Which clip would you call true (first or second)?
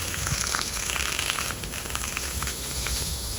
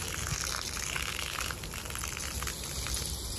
second